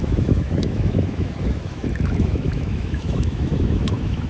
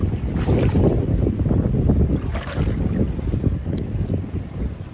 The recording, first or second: second